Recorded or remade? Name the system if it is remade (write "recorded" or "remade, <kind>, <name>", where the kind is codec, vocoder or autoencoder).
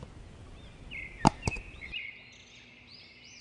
recorded